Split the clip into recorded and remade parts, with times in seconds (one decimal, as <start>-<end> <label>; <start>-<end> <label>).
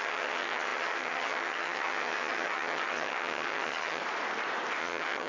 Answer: 0.0-4.0 remade; 4.0-4.8 recorded; 4.8-5.3 remade